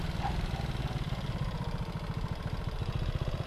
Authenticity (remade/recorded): recorded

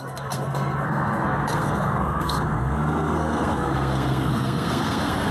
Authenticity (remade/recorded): remade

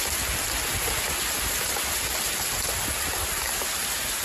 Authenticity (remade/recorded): recorded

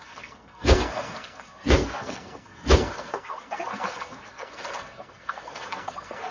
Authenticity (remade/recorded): remade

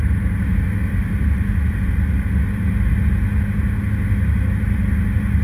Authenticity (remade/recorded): recorded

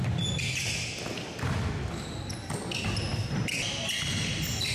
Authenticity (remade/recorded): recorded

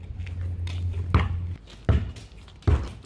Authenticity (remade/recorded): recorded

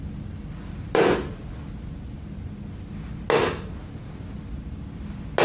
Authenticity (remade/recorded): recorded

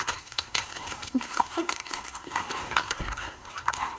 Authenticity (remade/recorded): remade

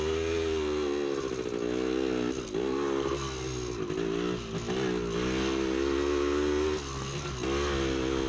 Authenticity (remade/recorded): recorded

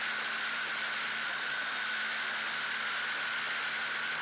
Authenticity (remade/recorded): recorded